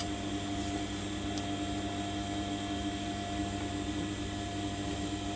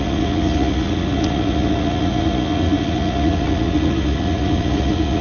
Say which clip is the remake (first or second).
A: second